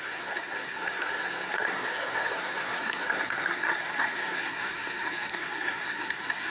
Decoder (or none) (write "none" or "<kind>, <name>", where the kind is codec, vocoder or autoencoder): codec, SNAC